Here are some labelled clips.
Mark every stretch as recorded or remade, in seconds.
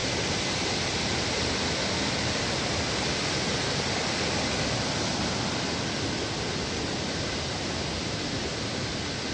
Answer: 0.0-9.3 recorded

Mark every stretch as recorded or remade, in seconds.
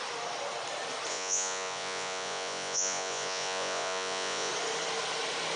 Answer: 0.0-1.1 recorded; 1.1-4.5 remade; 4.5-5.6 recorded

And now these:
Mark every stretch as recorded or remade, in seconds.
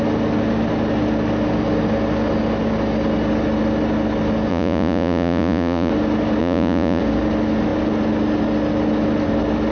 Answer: 0.0-4.5 recorded; 4.5-5.9 remade; 5.9-6.4 recorded; 6.4-7.0 remade; 7.0-9.7 recorded